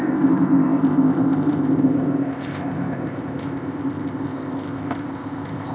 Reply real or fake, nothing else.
fake